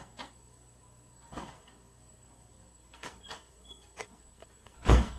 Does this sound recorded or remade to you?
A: remade